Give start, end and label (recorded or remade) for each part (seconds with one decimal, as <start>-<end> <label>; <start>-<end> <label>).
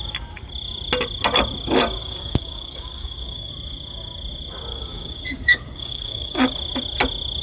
0.0-2.0 recorded; 2.0-3.5 remade; 3.5-4.7 recorded; 4.7-6.5 remade; 6.5-7.4 recorded